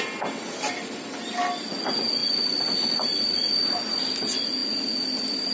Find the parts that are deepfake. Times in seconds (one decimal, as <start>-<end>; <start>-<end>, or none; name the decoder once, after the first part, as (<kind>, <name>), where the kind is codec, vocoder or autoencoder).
none